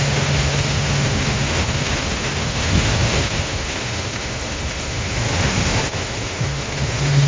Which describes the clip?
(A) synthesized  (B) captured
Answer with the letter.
A